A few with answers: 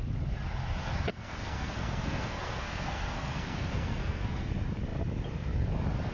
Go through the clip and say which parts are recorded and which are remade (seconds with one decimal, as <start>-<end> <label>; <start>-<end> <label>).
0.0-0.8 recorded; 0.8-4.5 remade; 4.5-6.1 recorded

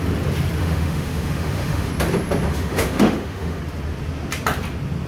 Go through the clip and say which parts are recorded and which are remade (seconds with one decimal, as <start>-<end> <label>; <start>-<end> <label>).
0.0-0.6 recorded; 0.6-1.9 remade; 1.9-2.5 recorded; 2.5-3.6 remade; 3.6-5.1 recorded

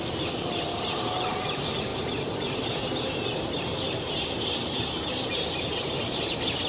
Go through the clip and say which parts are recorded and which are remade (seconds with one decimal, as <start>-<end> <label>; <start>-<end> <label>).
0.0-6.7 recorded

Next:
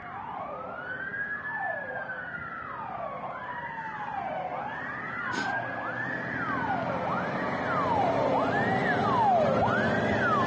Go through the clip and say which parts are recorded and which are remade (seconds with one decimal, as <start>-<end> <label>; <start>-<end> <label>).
0.0-10.5 recorded

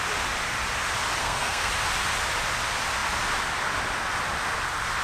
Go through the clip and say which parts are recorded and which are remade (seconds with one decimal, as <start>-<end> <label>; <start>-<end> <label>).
0.0-1.2 recorded; 1.2-1.7 remade; 1.7-5.0 recorded

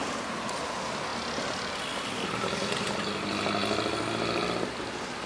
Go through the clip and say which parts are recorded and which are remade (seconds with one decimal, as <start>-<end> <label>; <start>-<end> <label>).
0.0-5.3 recorded

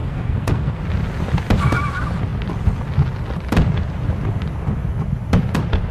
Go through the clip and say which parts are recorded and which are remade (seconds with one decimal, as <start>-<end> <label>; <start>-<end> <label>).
0.0-0.8 remade; 0.8-5.9 recorded

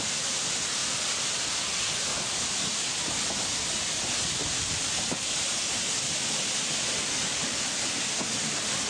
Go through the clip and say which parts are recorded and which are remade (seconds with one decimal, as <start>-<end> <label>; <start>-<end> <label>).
0.0-8.9 recorded